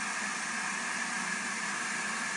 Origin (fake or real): real